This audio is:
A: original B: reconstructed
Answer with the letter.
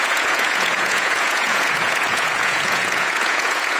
B